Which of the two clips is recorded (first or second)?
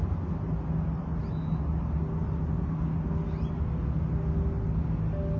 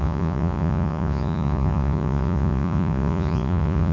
first